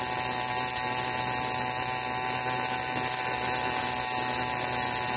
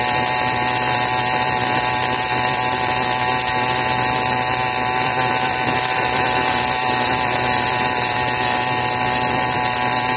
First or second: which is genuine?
first